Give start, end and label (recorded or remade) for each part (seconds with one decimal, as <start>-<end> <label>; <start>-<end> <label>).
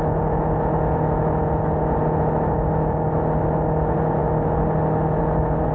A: 0.0-5.7 recorded